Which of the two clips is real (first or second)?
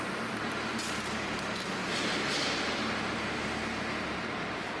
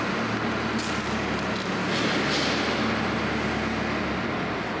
second